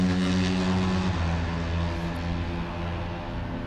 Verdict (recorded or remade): recorded